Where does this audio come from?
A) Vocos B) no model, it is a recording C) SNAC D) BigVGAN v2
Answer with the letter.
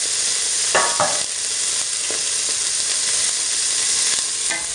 B